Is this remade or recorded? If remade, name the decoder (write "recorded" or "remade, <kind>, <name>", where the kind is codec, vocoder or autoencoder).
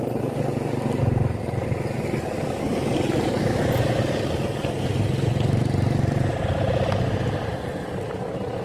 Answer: recorded